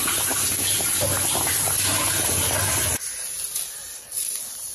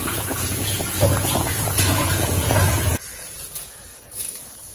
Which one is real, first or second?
first